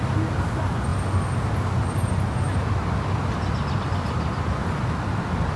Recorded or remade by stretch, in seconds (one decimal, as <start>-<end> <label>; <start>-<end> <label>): 0.0-5.6 recorded